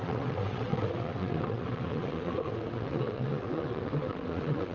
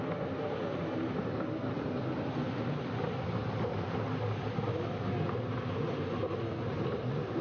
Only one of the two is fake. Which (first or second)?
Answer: first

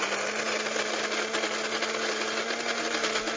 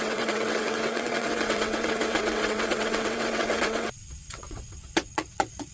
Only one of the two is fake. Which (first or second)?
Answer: second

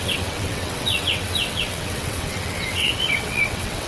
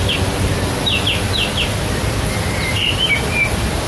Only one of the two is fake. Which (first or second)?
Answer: first